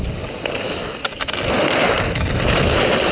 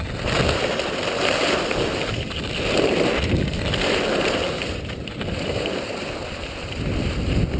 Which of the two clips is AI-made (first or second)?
second